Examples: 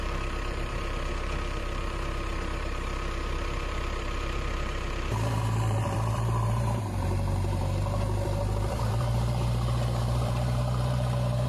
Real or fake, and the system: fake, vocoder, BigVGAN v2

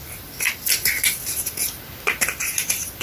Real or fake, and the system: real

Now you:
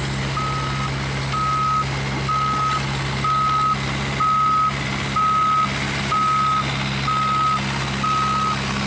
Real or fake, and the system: real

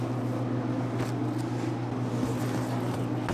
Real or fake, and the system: real